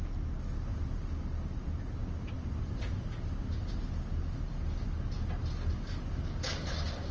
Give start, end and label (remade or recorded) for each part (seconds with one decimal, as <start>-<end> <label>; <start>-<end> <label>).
0.0-7.1 recorded